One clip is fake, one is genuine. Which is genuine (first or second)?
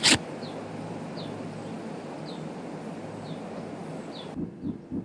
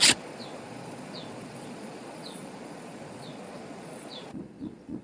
first